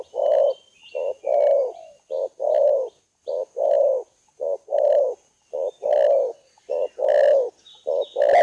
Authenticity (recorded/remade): recorded